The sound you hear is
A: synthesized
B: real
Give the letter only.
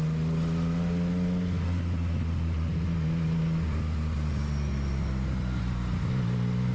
B